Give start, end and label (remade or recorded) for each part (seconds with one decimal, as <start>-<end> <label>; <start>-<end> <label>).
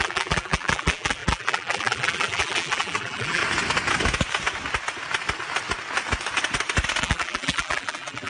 0.0-3.4 remade; 3.4-7.0 recorded; 7.0-8.3 remade